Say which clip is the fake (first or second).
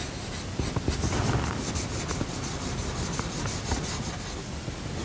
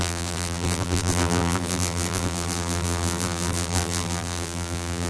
second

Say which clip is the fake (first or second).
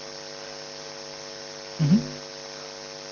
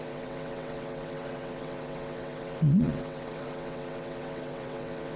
second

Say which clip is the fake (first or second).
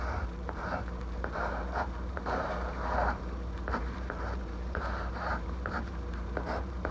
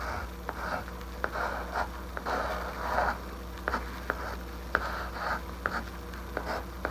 first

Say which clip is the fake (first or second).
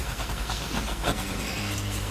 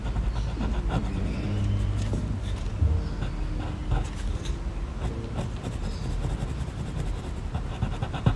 first